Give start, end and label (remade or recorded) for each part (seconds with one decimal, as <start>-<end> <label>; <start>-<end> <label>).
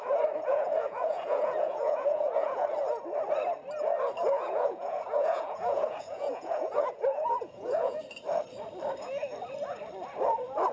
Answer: 0.0-0.5 recorded; 0.5-2.7 remade; 2.7-4.2 recorded; 4.2-8.0 remade; 8.0-10.7 recorded